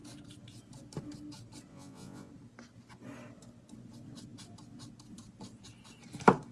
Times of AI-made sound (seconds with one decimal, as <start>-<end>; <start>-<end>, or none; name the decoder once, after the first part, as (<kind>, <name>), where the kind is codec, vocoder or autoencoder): 1.7-2.3 (vocoder, Vocos)